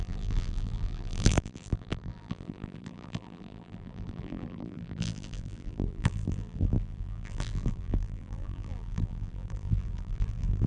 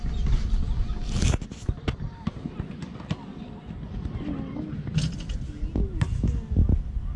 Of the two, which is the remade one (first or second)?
first